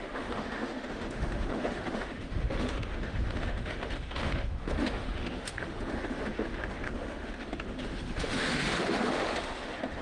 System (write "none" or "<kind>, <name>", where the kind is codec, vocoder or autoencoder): autoencoder, DAC-VAE